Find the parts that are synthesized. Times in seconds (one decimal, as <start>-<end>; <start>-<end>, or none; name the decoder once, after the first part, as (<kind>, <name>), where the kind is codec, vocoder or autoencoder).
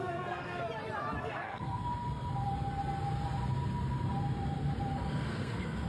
0.0-0.6 (codec, SNAC); 1.2-1.8; 5.1-5.9